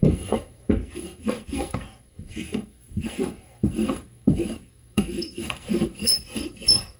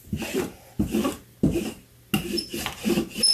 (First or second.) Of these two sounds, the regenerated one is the first